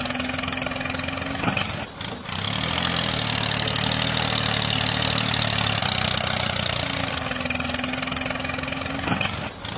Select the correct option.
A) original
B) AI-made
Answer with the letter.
A